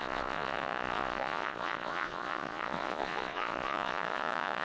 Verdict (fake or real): fake